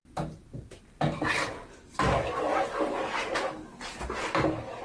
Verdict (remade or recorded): recorded